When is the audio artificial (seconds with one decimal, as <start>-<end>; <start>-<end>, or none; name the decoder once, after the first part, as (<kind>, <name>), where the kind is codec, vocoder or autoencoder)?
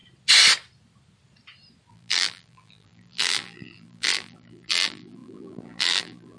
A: 1.9-6.4 (vocoder, BigVGAN v2)